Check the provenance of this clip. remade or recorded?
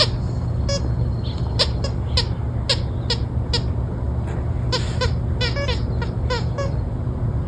recorded